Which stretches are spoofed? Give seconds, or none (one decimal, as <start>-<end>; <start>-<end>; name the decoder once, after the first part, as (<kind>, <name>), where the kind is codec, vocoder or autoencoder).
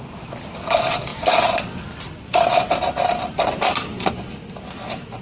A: none